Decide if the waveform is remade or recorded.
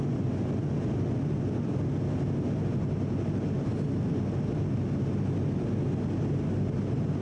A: recorded